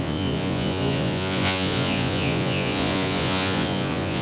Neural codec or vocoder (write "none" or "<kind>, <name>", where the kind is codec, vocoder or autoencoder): vocoder, Vocos